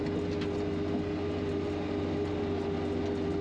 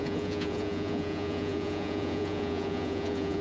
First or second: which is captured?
first